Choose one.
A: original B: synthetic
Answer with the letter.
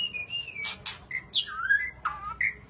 A